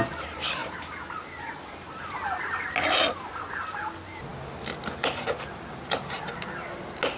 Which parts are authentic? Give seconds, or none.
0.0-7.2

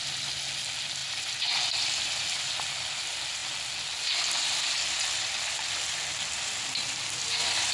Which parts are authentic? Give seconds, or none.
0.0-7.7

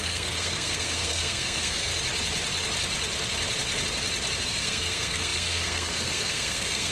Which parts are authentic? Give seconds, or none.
1.9-4.4